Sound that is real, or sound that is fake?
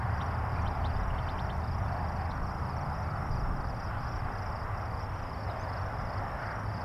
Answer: fake